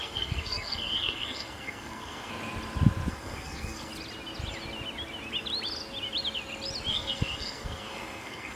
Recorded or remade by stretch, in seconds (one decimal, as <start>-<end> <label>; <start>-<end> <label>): 0.0-2.3 remade; 2.3-3.1 recorded; 3.1-3.9 remade; 3.9-6.9 recorded; 6.9-8.6 remade

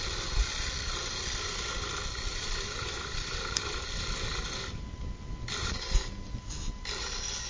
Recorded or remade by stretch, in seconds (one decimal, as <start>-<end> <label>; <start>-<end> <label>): 0.0-2.3 recorded; 2.3-3.8 remade; 3.8-7.5 recorded

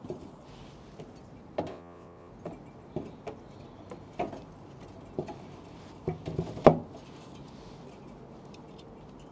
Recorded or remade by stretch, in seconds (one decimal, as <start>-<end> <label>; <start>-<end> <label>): 0.0-1.7 recorded; 1.7-2.3 remade; 2.3-9.3 recorded

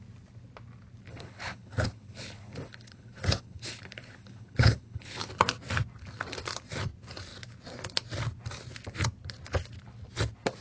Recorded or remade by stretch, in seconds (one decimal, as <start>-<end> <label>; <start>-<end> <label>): 0.0-1.1 recorded; 1.1-5.3 remade; 5.3-10.6 recorded

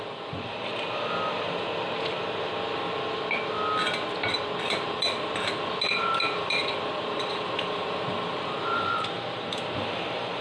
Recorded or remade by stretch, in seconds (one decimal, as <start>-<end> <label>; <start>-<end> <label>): 0.0-0.7 remade; 0.7-4.9 recorded; 4.9-10.4 remade